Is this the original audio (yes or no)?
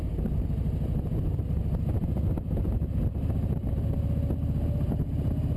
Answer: yes